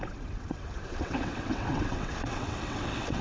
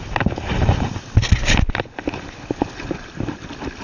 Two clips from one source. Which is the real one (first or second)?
second